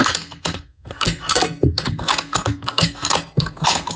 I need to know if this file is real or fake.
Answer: fake